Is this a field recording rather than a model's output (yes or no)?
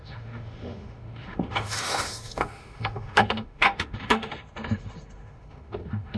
no